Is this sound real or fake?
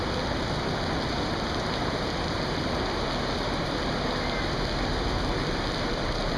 real